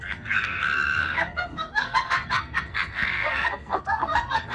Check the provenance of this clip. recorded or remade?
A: remade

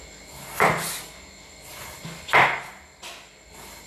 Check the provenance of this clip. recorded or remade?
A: recorded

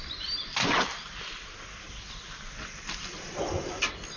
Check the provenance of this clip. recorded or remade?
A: recorded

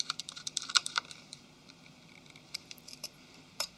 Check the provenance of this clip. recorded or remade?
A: remade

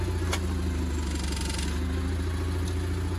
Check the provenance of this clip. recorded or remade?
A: recorded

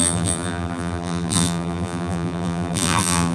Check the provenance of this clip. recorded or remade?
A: remade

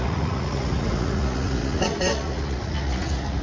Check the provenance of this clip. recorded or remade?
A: remade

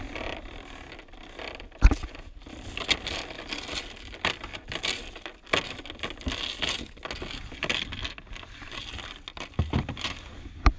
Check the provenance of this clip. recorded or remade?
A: recorded